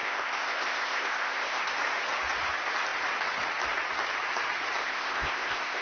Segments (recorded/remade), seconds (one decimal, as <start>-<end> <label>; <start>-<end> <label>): 0.0-1.6 remade; 1.6-4.8 recorded; 4.8-5.8 remade